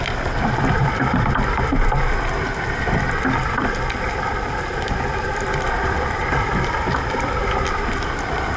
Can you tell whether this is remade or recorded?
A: remade